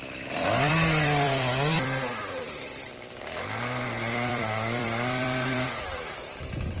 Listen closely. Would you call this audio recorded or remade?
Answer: remade